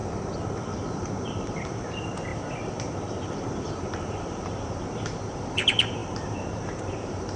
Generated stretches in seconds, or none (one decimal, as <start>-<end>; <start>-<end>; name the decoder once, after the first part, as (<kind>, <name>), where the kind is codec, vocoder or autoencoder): 0.6-7.4 (vocoder, BigVGAN v2)